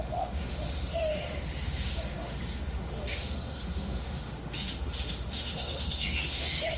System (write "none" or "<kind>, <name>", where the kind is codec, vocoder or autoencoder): autoencoder, DAC-VAE